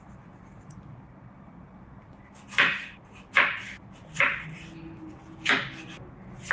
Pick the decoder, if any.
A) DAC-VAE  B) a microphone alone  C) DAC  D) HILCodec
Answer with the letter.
B